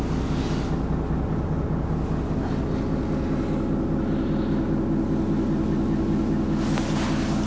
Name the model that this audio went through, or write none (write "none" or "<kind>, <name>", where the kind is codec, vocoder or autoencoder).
none